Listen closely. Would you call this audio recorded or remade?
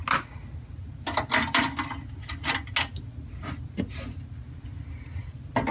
recorded